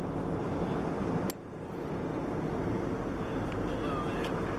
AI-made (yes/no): no